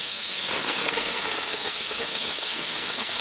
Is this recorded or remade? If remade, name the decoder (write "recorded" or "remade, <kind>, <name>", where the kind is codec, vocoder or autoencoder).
remade, codec, SNAC